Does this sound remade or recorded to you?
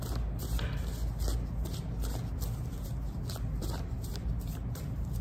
recorded